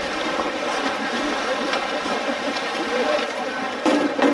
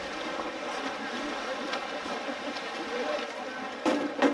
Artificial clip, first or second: first